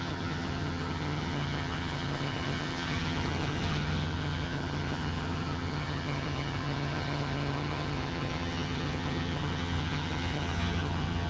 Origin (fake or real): fake